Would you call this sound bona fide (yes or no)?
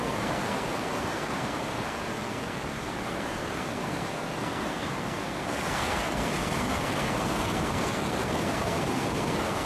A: no